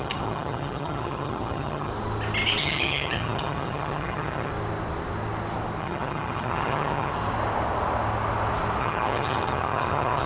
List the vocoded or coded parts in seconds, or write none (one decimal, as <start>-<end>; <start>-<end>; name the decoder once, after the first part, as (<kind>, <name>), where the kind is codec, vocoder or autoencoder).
0.0-1.9 (vocoder, HiFi-GAN); 2.6-4.5; 5.8-7.1; 8.8-10.3